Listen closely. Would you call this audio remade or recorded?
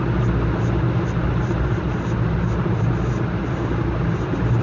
recorded